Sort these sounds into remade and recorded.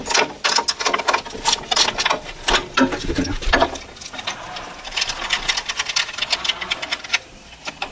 recorded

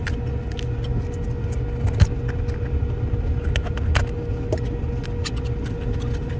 recorded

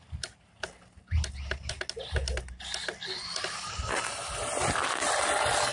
recorded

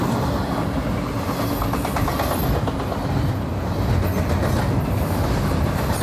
recorded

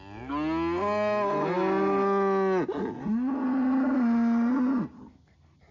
recorded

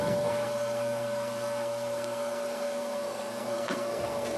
remade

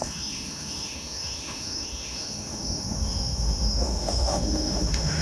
remade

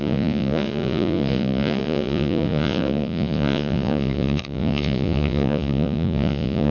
remade